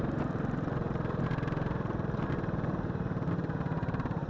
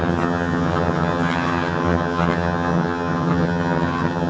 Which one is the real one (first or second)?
first